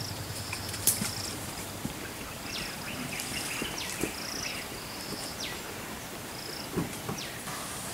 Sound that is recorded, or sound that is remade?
remade